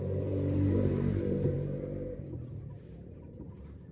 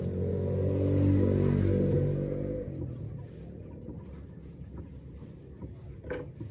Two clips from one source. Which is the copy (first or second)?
first